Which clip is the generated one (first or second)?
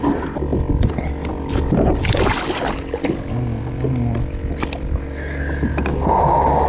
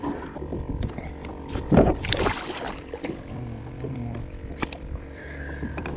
second